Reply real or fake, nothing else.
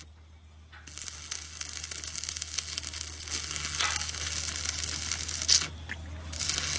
real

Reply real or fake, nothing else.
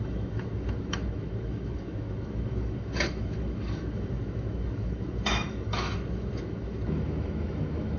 fake